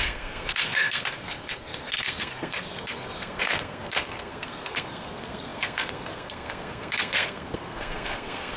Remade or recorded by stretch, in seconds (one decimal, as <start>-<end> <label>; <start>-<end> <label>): 0.0-8.6 remade